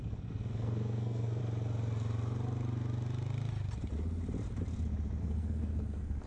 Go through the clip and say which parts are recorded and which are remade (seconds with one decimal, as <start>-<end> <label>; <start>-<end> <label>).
0.0-1.4 remade; 1.4-5.2 recorded; 5.2-6.3 remade